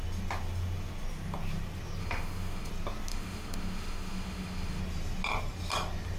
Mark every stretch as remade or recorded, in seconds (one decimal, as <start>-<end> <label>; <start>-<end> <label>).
0.0-2.0 recorded; 2.0-2.7 remade; 2.7-3.1 recorded; 3.1-4.8 remade; 4.8-6.2 recorded